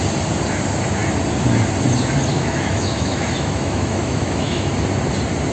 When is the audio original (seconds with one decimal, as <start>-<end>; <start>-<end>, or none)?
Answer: 0.0-2.3; 4.7-5.5